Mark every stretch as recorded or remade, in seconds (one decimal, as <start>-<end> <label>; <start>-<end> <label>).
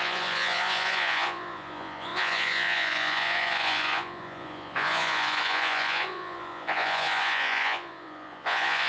0.0-8.9 remade